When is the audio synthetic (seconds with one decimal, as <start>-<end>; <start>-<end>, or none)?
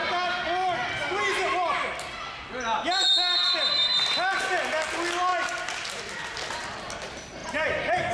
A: 5.3-6.0; 7.4-8.1